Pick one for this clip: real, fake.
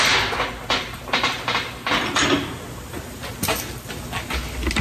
real